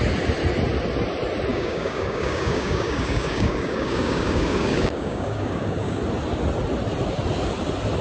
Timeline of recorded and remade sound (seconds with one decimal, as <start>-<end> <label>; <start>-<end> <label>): 0.0-1.5 recorded; 1.5-6.0 remade; 6.0-8.0 recorded